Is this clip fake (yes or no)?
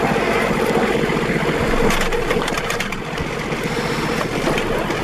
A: no